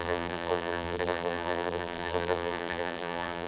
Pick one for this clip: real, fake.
fake